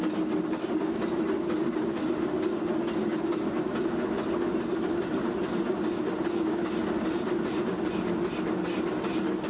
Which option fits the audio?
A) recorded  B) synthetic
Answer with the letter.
A